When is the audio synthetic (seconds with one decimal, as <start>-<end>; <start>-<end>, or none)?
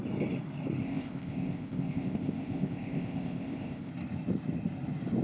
0.8-3.9